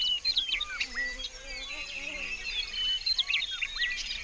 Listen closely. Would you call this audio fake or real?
real